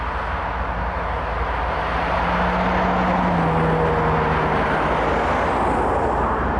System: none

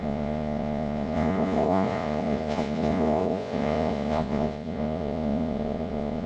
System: vocoder, Vocos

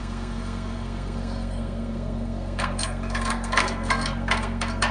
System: codec, SNAC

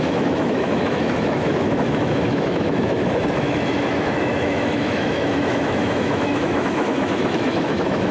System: autoencoder, DAC-VAE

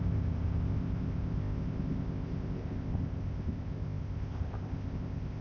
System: codec, ZipCodec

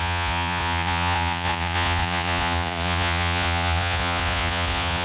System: vocoder, Vocos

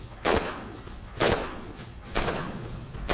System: vocoder, Vocos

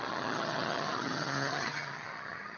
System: vocoder, HiFi-GAN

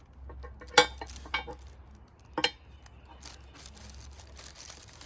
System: none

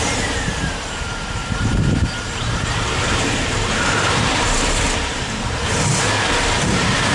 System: vocoder, BigVGAN v2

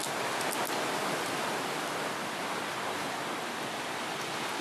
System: none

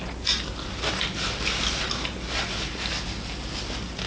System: none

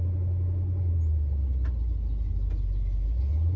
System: none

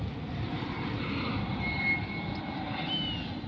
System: none